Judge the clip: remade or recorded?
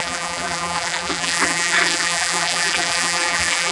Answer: remade